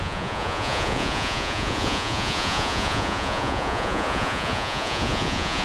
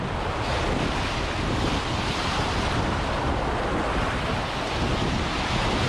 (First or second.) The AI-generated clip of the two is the first